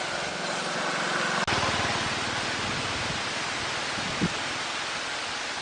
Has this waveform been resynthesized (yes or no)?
no